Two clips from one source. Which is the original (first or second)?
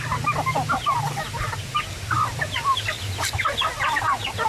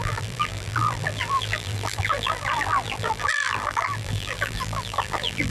first